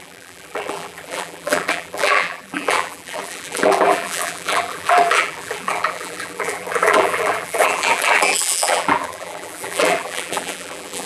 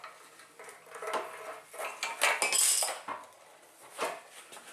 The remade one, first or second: first